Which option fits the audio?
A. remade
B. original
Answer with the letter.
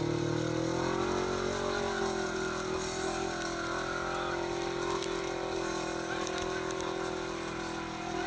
B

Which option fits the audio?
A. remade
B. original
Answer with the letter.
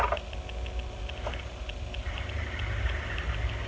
B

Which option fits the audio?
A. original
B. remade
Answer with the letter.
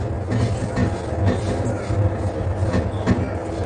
A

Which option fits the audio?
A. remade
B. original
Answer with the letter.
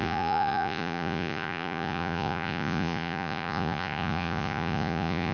A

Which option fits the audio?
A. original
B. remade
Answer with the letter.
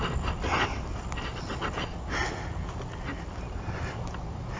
A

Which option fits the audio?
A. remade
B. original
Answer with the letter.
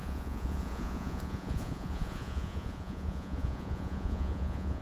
A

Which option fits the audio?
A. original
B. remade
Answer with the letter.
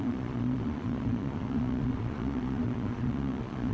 B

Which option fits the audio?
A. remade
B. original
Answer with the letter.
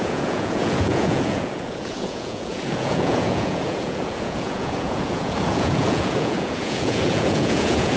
A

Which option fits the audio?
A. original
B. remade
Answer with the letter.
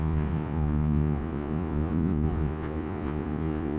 B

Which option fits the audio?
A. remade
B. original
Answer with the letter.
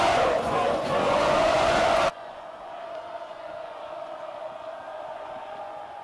A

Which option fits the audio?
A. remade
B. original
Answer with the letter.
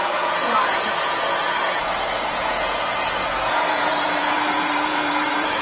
A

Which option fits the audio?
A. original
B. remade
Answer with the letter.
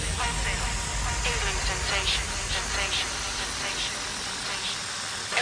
A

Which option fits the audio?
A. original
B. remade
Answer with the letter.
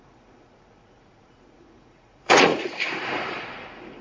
B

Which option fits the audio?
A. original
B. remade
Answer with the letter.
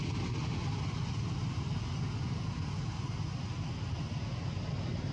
A